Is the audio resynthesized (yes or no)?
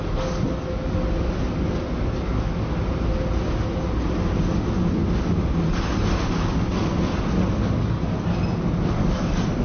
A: no